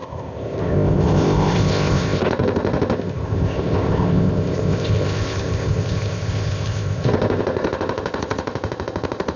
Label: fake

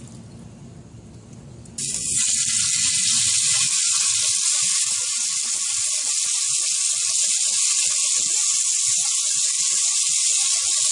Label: real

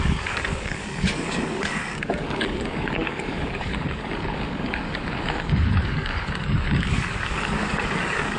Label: fake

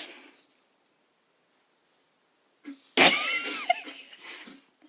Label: real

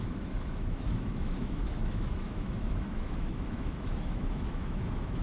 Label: fake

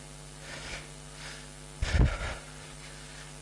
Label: real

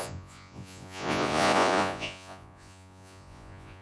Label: fake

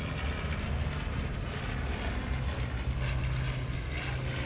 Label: real